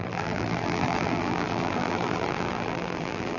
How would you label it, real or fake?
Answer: fake